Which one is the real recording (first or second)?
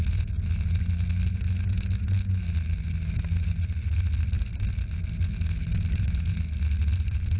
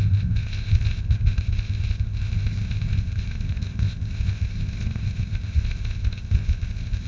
first